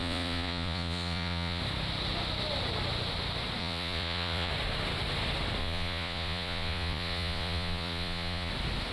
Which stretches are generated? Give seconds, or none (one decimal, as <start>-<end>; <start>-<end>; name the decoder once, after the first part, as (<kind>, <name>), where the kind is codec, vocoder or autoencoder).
0.0-1.6 (vocoder, Vocos); 3.6-4.5; 5.6-8.5